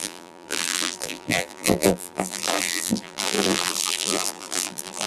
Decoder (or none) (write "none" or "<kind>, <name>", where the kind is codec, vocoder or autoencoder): vocoder, BigVGAN v2